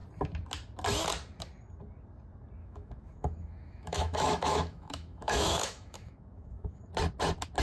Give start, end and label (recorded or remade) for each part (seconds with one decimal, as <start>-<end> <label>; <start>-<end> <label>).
0.0-2.6 recorded; 2.6-6.9 remade; 6.9-7.6 recorded